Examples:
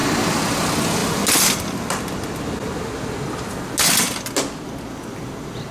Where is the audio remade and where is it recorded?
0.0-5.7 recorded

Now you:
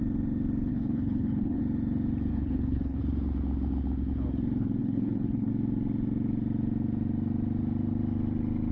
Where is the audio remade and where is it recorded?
0.0-0.7 recorded; 0.7-1.6 remade; 1.6-2.3 recorded; 2.3-3.0 remade; 3.0-4.8 recorded; 4.8-5.5 remade; 5.5-8.7 recorded

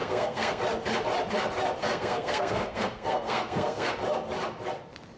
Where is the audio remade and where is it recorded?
0.0-0.6 remade; 0.6-1.8 recorded; 1.8-3.9 remade; 3.9-5.2 recorded